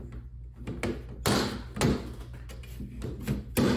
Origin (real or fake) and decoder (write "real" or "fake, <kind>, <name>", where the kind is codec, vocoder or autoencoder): real